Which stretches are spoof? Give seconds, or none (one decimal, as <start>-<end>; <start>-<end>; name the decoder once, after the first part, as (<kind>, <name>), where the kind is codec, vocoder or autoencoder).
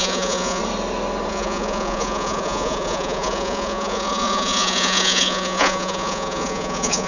0.0-0.6 (vocoder, Vocos); 1.3-7.1